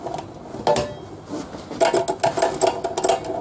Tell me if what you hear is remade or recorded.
recorded